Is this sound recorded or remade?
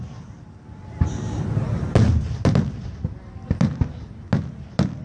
recorded